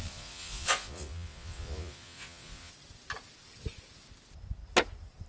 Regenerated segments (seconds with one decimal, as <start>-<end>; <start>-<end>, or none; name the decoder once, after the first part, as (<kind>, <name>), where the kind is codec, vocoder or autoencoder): 0.0-2.7 (vocoder, Vocos)